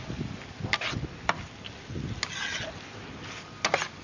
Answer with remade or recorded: recorded